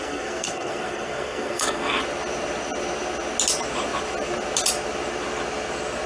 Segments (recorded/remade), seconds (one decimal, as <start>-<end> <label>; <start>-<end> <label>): 0.0-2.0 remade; 2.0-6.1 recorded